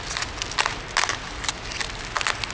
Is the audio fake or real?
real